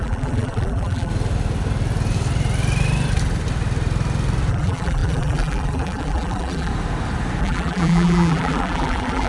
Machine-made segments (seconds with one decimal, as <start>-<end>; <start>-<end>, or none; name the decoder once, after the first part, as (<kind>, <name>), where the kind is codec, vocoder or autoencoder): 0.0-1.1 (vocoder, BigVGAN v2); 4.5-6.7; 7.4-9.3